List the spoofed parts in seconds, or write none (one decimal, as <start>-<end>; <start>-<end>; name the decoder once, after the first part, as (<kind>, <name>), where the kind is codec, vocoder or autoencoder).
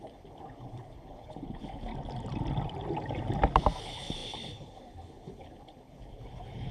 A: 0.0-1.9 (codec, HILCodec); 3.8-6.7